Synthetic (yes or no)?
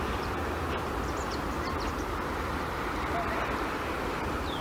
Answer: yes